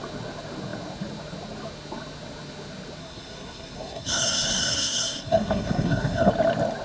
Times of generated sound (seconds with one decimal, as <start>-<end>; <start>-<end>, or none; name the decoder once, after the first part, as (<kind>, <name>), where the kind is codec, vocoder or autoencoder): 3.0-6.3 (codec, SNAC)